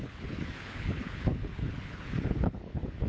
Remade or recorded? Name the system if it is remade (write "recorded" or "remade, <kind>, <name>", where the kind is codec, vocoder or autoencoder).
remade, codec, HILCodec